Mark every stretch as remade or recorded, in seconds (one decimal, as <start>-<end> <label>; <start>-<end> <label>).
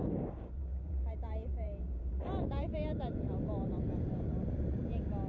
0.0-5.3 remade